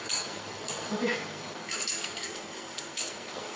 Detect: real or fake fake